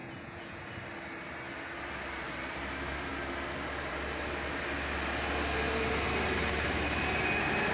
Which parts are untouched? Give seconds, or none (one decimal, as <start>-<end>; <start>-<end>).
0.6-7.7